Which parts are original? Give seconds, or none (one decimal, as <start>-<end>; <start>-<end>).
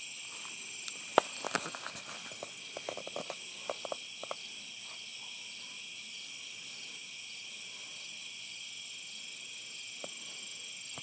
0.0-11.0